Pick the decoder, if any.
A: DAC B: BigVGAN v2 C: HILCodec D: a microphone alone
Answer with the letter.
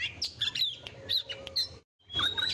D